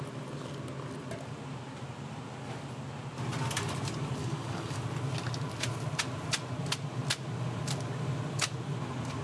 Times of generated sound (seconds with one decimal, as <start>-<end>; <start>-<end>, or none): 4.2-4.8